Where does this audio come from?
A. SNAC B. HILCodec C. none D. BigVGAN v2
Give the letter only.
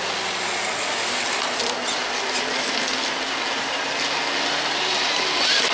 C